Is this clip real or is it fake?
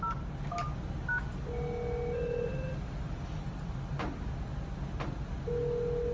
real